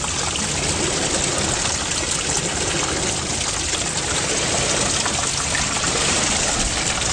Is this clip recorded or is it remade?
recorded